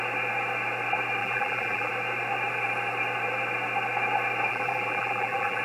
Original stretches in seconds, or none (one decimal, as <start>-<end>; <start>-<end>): 0.0-1.2; 1.9-4.5